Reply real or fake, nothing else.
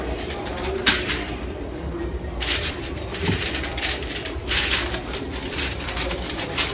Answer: fake